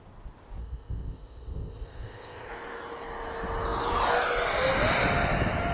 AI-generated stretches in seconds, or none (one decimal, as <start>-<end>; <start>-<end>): 0.6-2.5